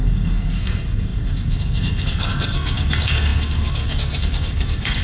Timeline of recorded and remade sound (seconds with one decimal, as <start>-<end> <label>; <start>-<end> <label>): 0.0-5.0 remade